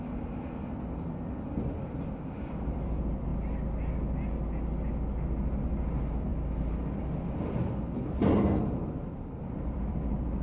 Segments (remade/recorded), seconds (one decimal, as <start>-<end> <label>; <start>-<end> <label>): 0.0-3.3 remade; 3.3-5.6 recorded; 5.6-6.3 remade; 6.3-7.0 recorded; 7.0-10.4 remade